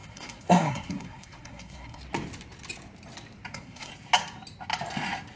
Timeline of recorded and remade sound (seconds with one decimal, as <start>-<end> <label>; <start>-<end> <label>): 0.0-2.0 remade; 2.0-3.5 recorded; 3.5-3.9 remade; 3.9-5.4 recorded